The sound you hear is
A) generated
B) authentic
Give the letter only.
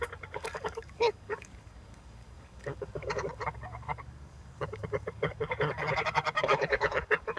A